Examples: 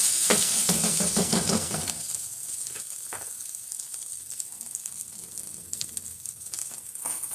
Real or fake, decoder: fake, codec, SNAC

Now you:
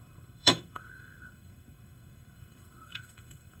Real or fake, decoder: fake, codec, SNAC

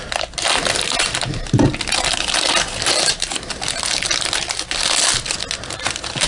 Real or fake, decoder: real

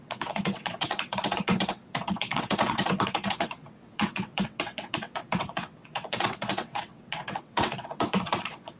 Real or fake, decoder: fake, vocoder, WaveNeXt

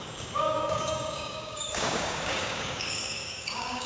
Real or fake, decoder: fake, codec, DAC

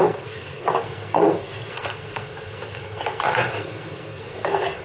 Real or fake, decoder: fake, codec, SNAC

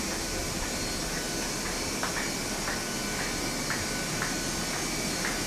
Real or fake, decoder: real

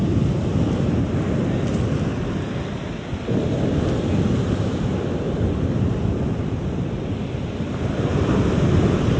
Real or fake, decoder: real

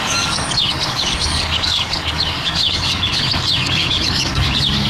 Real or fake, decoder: fake, codec, DAC